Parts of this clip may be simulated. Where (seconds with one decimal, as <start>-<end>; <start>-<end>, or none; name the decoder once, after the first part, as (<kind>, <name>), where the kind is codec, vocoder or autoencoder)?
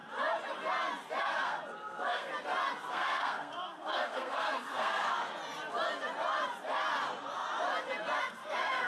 1.2-2.3 (codec, SNAC); 2.9-5.2; 8.2-8.9